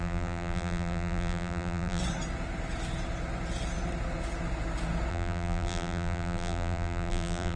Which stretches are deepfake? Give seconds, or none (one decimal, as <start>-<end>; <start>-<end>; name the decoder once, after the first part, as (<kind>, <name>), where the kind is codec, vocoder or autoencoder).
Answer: 0.0-2.0 (vocoder, BigVGAN v2); 5.1-7.6